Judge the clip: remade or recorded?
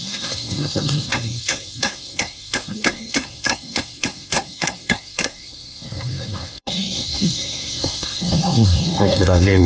remade